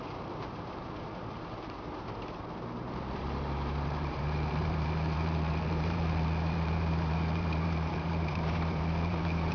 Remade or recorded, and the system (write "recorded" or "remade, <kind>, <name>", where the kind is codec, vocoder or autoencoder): remade, vocoder, BigVGAN v2